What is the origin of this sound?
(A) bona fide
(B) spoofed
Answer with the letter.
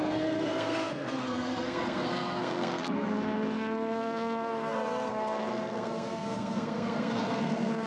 B